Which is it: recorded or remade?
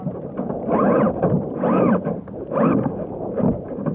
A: recorded